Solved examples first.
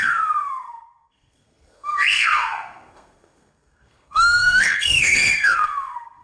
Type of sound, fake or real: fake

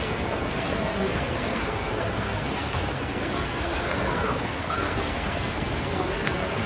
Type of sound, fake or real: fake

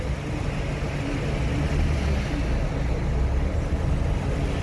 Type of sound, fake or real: real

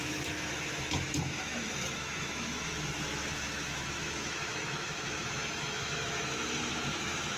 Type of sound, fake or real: fake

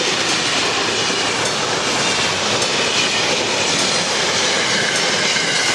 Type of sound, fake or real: real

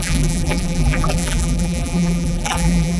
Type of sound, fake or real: fake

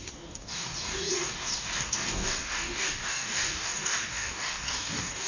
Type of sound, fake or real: fake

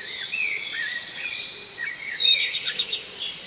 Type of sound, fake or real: fake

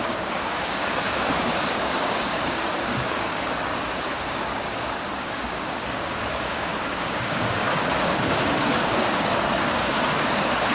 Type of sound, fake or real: fake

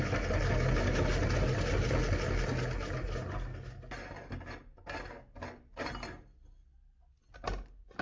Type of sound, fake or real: real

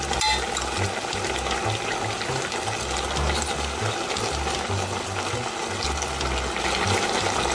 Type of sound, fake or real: real